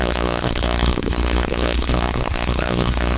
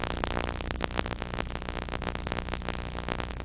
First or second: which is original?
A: second